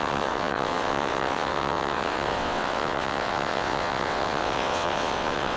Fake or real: fake